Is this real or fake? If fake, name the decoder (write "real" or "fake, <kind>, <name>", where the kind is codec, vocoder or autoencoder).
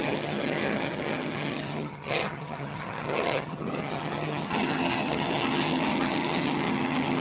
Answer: fake, vocoder, HiFi-GAN